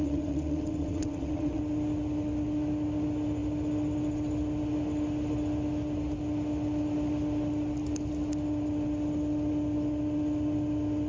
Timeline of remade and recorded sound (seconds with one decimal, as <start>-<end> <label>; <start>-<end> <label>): 0.0-1.6 remade; 1.6-11.1 recorded